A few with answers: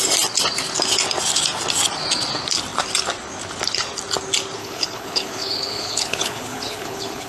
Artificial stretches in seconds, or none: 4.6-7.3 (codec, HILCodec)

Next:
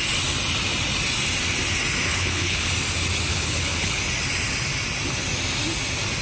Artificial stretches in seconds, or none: 2.1-2.7 (codec, HILCodec); 3.3-4.0

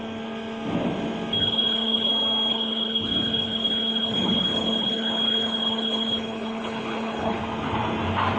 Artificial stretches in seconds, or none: 1.4-2.1 (codec, HILCodec); 2.5-7.4

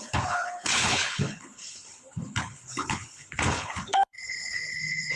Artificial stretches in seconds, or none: 0.0-5.2 (codec, HILCodec)

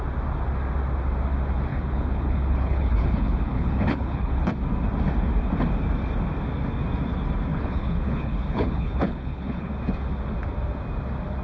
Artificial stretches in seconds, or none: 1.7-4.5 (codec, HILCodec); 7.5-9.7

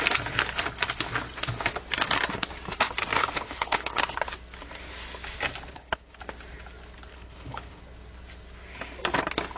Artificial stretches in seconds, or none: 3.2-4.0 (codec, HILCodec); 5.7-6.2; 7.1-7.8

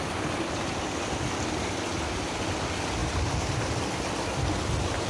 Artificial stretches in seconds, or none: none